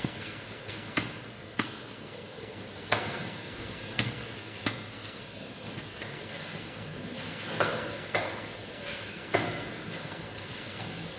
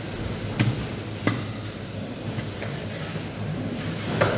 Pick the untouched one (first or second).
second